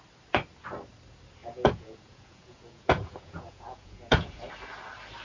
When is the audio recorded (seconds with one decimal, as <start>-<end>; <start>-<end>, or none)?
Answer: 0.0-1.4; 4.5-5.2